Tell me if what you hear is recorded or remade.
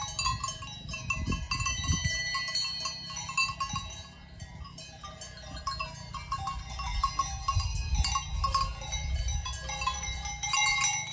recorded